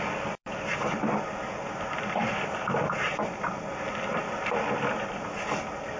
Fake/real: real